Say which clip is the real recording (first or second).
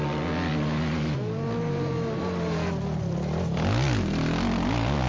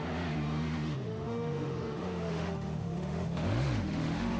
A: first